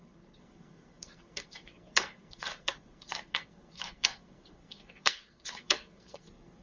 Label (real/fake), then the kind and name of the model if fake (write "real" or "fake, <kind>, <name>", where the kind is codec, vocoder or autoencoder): fake, codec, SNAC